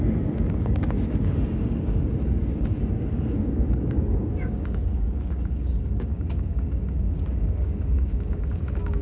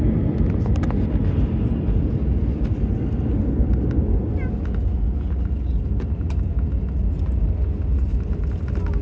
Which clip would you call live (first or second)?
second